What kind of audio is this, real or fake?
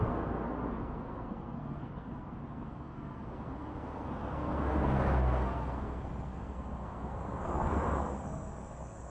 fake